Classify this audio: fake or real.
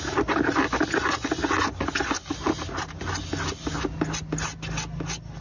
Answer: real